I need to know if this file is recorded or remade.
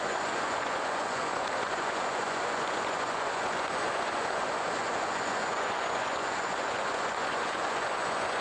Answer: remade